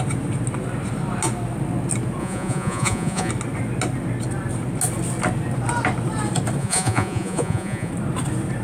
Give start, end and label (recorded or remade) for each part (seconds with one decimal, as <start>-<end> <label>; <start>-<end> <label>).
0.0-2.2 recorded; 2.2-3.3 remade; 3.3-6.6 recorded; 6.6-7.9 remade; 7.9-8.6 recorded